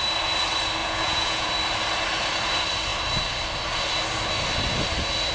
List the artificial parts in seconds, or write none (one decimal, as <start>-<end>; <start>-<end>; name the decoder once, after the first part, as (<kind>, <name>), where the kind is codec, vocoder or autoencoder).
0.8-1.5 (vocoder, Vocos)